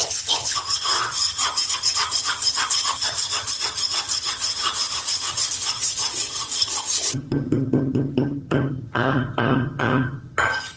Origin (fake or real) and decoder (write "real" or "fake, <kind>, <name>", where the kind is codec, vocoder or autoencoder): fake, vocoder, HiFi-GAN